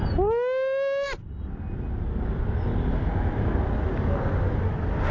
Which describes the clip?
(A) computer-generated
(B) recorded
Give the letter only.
B